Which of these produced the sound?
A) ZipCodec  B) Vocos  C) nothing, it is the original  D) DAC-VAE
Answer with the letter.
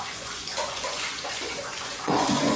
B